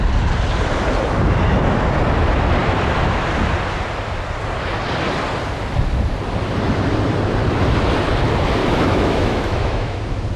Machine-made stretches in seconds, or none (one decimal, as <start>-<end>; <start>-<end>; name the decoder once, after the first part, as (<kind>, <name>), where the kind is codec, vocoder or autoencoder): 8.6-10.0 (autoencoder, DAC-VAE)